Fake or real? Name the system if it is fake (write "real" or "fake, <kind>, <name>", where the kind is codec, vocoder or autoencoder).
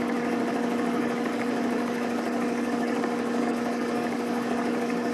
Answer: fake, codec, DAC